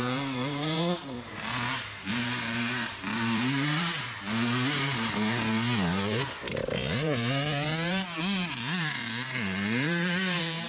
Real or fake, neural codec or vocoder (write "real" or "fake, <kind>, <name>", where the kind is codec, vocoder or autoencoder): fake, vocoder, BigVGAN v2